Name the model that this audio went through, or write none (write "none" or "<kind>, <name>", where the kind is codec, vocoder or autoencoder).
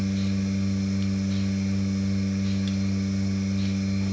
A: none